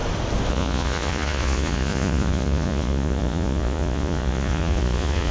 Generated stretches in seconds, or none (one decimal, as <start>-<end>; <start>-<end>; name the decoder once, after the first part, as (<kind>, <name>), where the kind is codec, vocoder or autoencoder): 0.5-5.3 (vocoder, Vocos)